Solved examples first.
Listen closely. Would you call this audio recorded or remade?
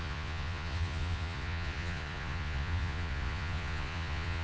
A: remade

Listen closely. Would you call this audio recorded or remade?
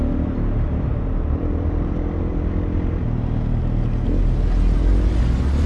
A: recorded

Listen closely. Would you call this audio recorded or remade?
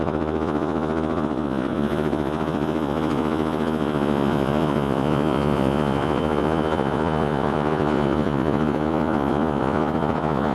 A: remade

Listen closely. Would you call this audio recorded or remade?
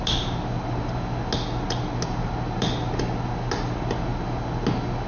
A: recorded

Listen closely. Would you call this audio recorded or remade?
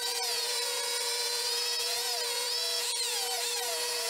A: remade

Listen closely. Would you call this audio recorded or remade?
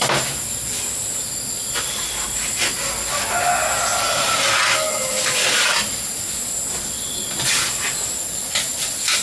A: recorded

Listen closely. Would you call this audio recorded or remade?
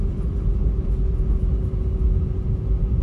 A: remade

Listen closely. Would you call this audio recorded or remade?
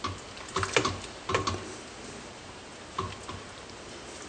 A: recorded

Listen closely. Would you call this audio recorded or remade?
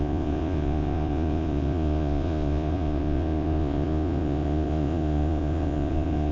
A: remade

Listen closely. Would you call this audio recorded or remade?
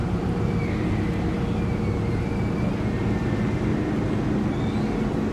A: recorded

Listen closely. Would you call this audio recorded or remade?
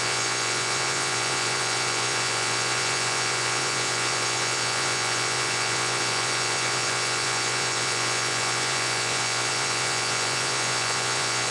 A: remade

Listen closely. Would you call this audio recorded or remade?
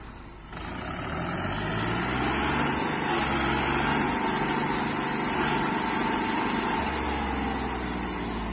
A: recorded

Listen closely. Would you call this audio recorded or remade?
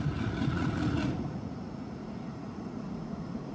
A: remade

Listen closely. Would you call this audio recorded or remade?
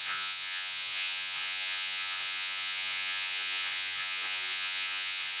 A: remade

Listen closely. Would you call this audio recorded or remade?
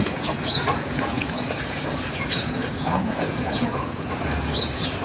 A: remade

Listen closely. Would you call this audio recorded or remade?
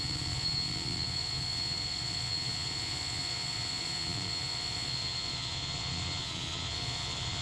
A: remade